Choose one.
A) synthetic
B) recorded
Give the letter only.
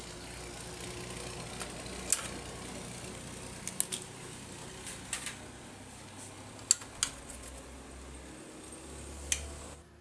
B